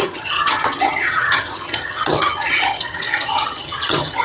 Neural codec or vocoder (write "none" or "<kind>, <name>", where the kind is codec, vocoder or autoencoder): vocoder, HiFi-GAN